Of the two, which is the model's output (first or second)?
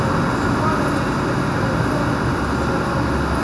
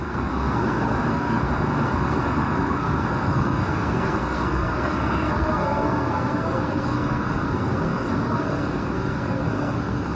second